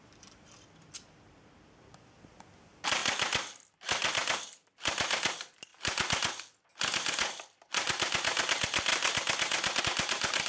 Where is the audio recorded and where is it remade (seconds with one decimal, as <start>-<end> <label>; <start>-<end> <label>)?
0.0-3.0 remade; 3.0-3.5 recorded; 3.5-5.7 remade; 5.7-7.7 recorded; 7.7-8.9 remade; 8.9-9.8 recorded; 9.8-10.5 remade

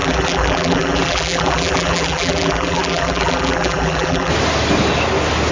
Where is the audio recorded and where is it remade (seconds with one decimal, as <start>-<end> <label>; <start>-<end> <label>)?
0.0-4.3 remade; 4.3-5.5 recorded

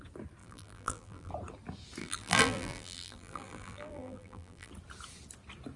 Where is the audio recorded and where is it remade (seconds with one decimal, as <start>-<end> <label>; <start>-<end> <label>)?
0.0-0.4 recorded; 0.4-1.3 remade; 1.3-2.0 recorded; 2.0-4.7 remade; 4.7-5.8 recorded

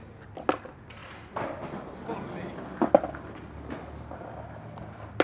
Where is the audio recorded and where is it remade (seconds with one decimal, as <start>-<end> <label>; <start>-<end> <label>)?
0.0-5.2 recorded

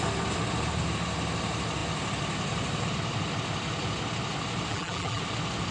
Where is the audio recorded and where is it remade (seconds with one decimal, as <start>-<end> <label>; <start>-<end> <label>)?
0.0-4.7 recorded; 4.7-5.2 remade; 5.2-5.7 recorded

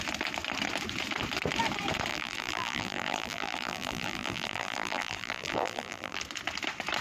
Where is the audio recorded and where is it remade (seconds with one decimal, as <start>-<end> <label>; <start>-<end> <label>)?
0.0-2.1 recorded; 2.1-6.2 remade; 6.2-7.0 recorded

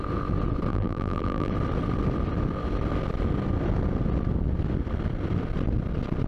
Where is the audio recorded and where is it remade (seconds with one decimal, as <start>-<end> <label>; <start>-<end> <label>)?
0.0-0.7 recorded; 0.7-1.5 remade; 1.5-6.3 recorded